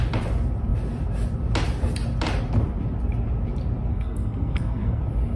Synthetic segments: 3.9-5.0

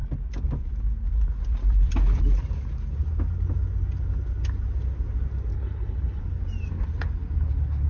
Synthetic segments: 5.5-6.2

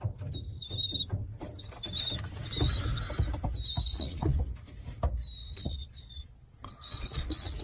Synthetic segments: 3.9-4.4; 5.4-7.6

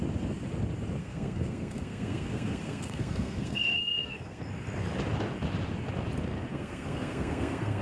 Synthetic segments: 1.0-4.4; 6.5-7.8

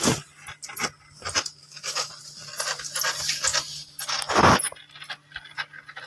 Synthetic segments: 1.6-2.1

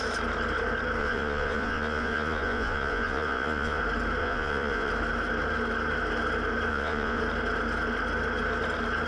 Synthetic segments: 1.0-3.8; 4.2-4.9; 6.7-7.2

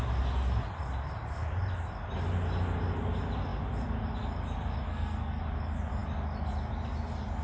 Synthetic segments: 4.9-5.4

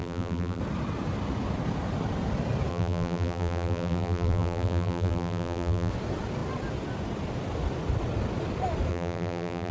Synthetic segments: 0.0-0.6; 2.7-5.9; 8.9-9.7